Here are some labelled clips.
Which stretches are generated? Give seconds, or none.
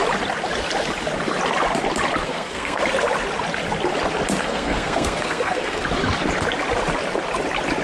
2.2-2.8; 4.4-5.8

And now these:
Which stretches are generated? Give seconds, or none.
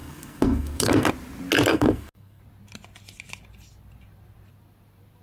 0.0-1.1; 1.7-2.4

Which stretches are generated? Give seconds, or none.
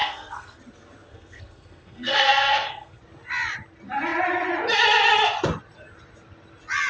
0.0-0.6; 1.1-3.0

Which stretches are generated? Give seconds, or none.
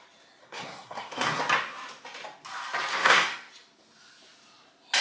0.4-1.4; 2.9-3.5